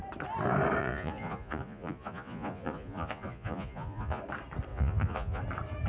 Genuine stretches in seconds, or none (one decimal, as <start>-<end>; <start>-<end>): 0.0-0.8; 4.2-4.7; 5.4-5.9